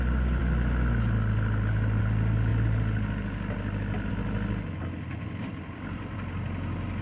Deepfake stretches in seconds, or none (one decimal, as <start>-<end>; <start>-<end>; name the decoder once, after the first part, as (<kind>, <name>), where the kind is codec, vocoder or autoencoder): none